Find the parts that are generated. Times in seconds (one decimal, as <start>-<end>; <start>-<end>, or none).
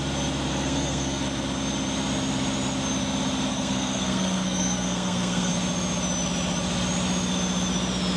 0.5-1.2; 3.5-5.5